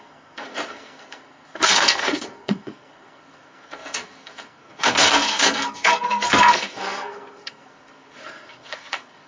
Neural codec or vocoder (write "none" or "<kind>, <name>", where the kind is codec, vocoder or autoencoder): codec, SNAC